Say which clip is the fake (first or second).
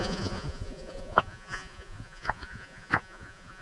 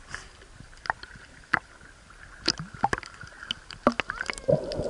first